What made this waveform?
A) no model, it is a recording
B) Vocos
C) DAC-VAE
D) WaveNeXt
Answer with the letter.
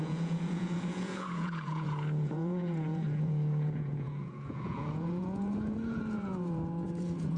B